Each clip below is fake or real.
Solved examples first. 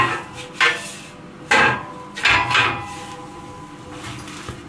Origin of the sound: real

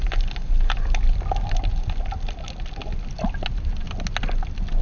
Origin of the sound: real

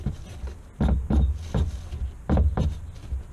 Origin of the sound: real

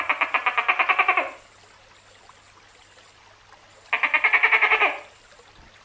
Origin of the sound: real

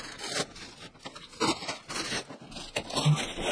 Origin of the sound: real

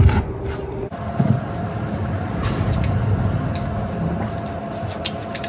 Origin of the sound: real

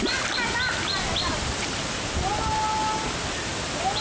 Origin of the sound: real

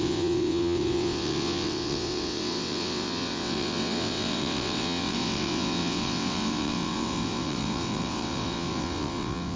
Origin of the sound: fake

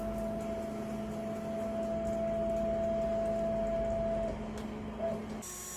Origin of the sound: real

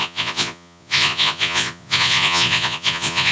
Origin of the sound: fake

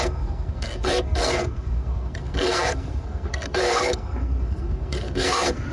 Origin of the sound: fake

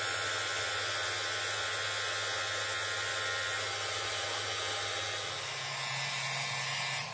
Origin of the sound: real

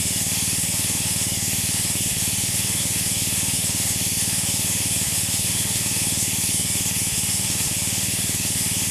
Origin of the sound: fake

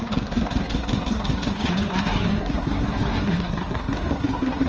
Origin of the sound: fake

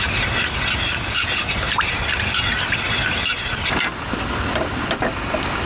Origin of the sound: real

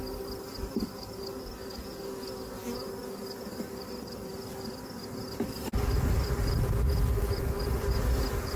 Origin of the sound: real